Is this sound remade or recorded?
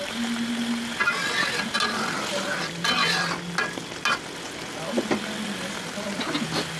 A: recorded